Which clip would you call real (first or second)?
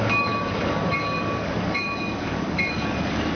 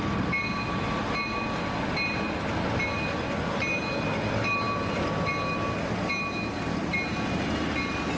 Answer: second